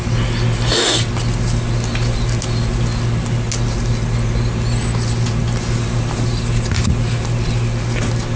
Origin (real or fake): real